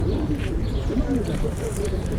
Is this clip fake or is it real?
fake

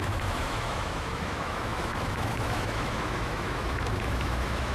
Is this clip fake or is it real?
fake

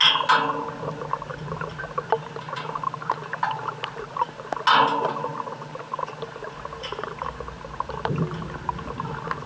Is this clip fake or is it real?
real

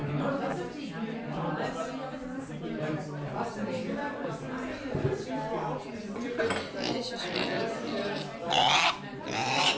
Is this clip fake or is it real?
real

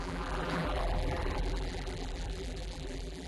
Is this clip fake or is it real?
fake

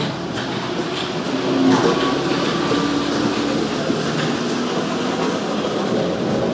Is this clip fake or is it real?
real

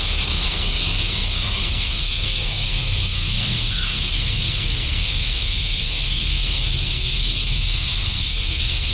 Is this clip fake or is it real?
fake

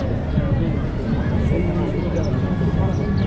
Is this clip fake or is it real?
real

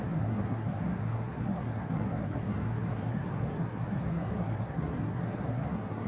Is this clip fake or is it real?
fake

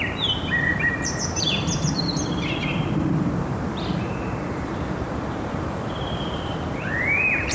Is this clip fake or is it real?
fake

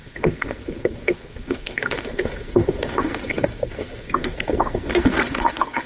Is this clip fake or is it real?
fake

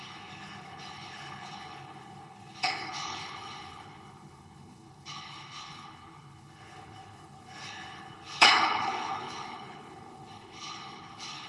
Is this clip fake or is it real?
fake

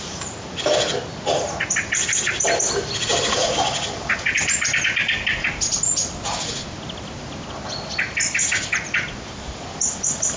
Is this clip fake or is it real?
real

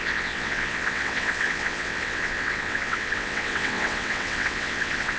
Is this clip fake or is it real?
fake